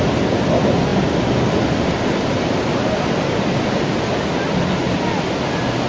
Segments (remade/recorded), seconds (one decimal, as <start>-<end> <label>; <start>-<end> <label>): 0.0-5.9 recorded